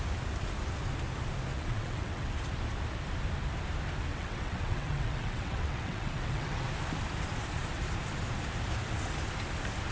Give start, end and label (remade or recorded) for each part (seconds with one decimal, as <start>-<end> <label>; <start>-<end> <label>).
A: 0.0-1.5 recorded; 1.5-2.3 remade; 2.3-4.1 recorded; 4.1-6.7 remade; 6.7-9.9 recorded